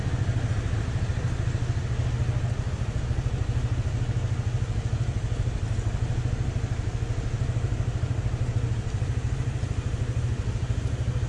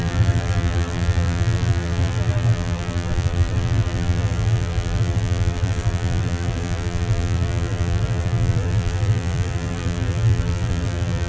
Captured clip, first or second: first